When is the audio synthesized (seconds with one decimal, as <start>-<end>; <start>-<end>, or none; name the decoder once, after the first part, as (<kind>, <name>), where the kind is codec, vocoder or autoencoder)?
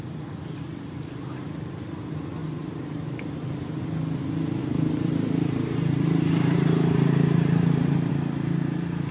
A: 2.4-3.4 (vocoder, BigVGAN v2); 4.6-8.1